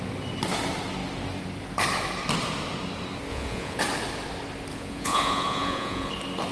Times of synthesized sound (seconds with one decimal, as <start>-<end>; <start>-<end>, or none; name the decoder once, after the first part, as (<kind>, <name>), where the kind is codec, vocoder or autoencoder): 3.3-3.8 (vocoder, Vocos); 4.7-6.1